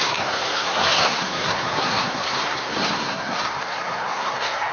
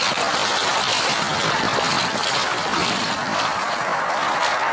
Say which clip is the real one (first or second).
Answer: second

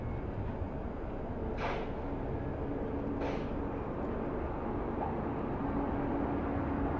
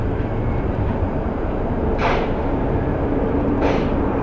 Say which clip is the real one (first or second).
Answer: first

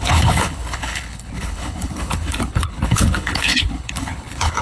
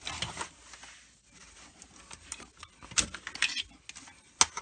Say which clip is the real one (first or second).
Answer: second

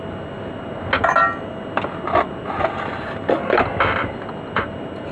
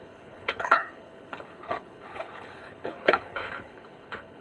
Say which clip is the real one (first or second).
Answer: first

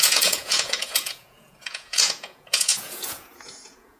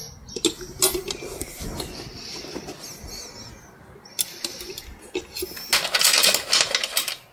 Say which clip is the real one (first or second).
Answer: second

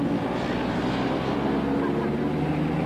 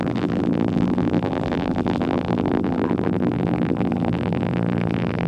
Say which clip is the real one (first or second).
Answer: first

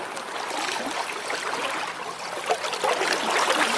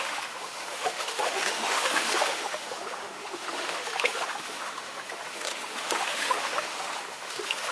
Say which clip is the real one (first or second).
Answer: first